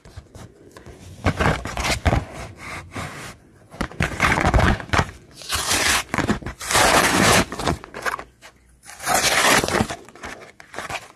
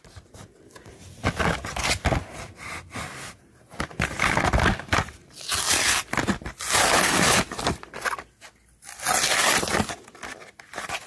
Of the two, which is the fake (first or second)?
first